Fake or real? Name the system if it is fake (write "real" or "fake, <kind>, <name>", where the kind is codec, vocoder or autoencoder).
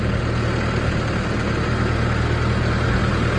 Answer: real